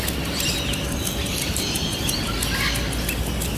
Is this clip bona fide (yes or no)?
yes